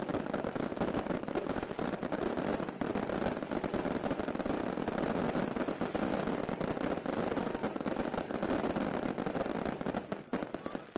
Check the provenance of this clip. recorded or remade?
recorded